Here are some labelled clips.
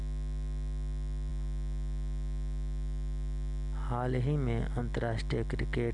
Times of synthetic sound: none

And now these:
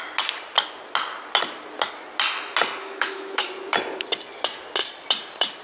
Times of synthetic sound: 2.8-3.5 (autoencoder, DAC-VAE)

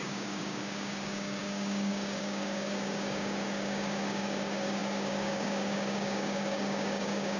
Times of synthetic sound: 0.0-7.4 (codec, DAC)